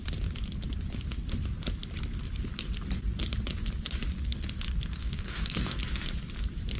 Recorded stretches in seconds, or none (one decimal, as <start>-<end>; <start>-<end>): 0.0-5.0; 5.8-6.8